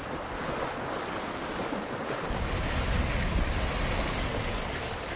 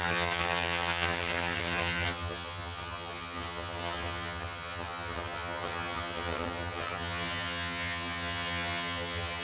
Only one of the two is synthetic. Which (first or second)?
second